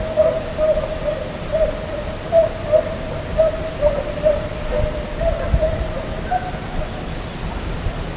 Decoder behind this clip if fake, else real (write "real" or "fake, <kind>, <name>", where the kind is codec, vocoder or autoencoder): real